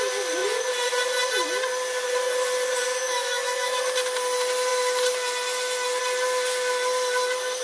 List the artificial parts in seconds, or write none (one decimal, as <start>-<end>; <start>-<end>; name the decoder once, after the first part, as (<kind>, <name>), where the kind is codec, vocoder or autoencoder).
2.9-3.8 (autoencoder, DAC-VAE)